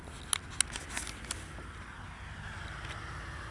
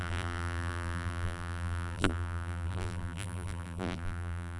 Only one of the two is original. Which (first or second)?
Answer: first